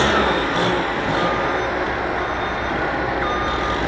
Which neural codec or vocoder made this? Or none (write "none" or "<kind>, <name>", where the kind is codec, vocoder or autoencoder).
none